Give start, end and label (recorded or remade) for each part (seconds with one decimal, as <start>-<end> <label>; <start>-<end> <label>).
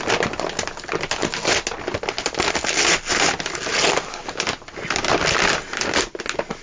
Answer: 0.0-6.6 recorded